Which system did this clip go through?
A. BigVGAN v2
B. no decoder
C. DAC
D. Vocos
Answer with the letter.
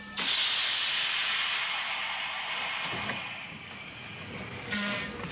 B